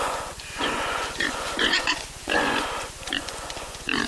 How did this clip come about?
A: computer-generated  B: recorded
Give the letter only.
A